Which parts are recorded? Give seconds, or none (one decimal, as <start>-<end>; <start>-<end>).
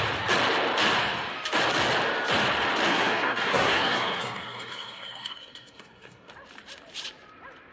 0.0-2.9; 6.3-7.7